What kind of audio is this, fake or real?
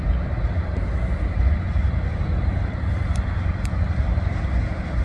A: real